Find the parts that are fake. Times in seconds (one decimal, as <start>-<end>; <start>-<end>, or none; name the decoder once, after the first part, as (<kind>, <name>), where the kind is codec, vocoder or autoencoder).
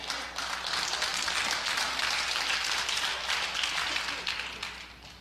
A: none